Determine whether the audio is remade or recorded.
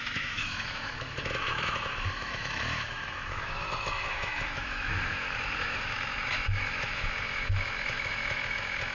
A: remade